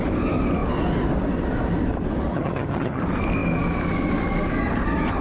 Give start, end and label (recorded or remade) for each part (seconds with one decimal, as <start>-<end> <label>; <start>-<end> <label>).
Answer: 0.0-2.3 recorded; 2.3-3.0 remade; 3.0-5.2 recorded

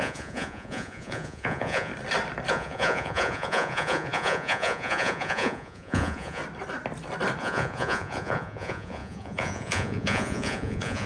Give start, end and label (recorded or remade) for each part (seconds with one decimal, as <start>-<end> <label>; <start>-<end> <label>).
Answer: 0.0-1.9 remade; 1.9-2.5 recorded; 2.5-6.4 remade; 6.4-7.4 recorded; 7.4-11.1 remade